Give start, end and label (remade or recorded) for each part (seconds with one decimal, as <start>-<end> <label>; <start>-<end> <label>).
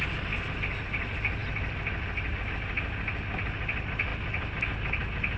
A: 0.0-5.4 recorded